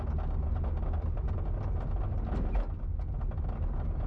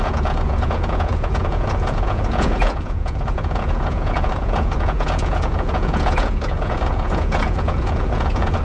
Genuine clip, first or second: first